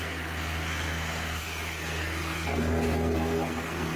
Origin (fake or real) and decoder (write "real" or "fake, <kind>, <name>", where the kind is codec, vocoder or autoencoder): fake, codec, SNAC